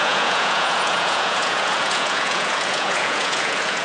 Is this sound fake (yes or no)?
yes